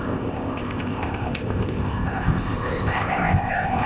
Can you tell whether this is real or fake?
fake